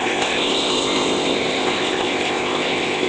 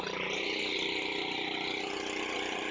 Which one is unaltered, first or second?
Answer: second